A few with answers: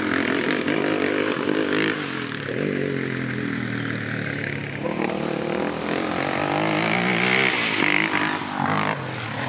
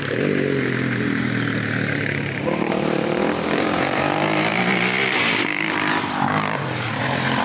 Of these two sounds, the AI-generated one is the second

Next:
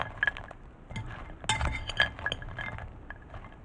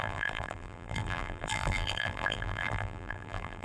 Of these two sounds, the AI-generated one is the second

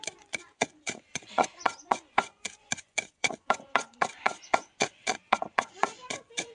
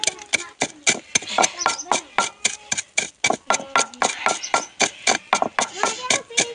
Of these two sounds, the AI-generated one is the first